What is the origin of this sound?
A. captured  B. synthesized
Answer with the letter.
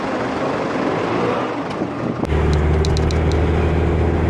A